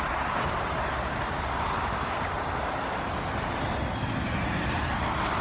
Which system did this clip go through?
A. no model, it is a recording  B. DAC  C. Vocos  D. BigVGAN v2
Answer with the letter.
A